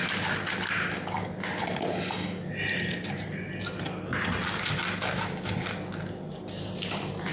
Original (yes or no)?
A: yes